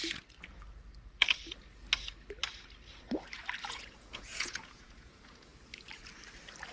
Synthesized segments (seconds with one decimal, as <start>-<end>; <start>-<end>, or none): 3.7-5.5